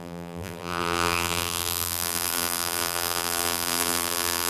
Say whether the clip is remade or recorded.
remade